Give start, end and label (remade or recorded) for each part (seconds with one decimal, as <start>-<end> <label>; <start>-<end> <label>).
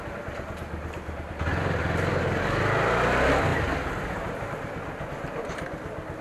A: 0.0-2.1 recorded; 2.1-2.6 remade; 2.6-6.2 recorded